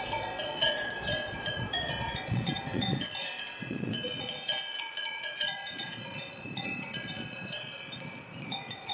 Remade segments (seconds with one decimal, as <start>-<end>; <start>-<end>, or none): 0.0-8.9